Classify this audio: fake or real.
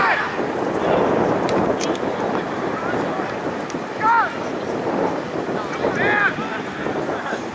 real